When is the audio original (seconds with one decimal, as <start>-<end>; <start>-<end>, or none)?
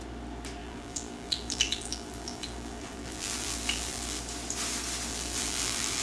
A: 0.0-0.6; 4.2-5.1